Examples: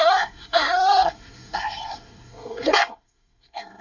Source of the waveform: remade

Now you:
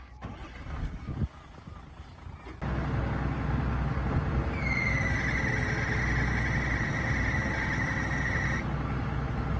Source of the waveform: recorded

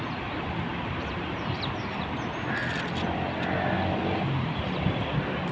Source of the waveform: recorded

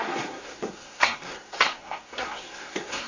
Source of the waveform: remade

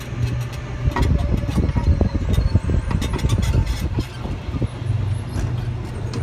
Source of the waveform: recorded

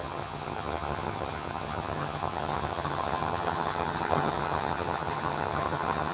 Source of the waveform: remade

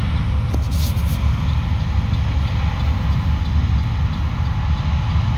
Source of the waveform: recorded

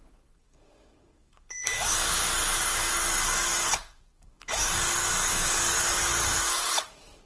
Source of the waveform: remade